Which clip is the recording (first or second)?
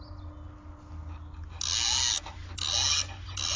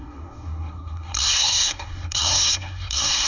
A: first